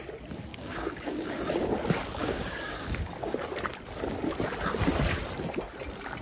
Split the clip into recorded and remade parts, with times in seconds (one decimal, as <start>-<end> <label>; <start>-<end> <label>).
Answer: 0.0-0.5 recorded; 0.5-1.4 remade; 1.4-2.2 recorded; 2.2-3.1 remade; 3.1-6.2 recorded